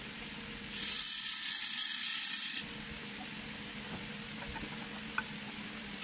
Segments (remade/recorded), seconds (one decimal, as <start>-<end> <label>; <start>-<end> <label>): 0.0-6.0 recorded